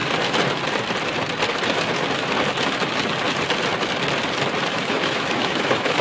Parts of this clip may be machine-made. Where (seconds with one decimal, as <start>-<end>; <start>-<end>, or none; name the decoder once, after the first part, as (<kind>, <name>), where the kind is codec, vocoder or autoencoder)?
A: 4.7-6.0 (autoencoder, DAC-VAE)